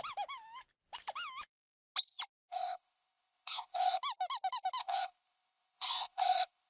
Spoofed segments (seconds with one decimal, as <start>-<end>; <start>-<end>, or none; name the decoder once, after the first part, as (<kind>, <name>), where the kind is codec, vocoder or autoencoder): 2.5-4.0 (codec, ZipCodec); 4.8-6.7